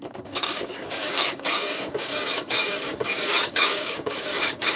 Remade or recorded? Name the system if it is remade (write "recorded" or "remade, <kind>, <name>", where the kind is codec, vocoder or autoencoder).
remade, codec, DAC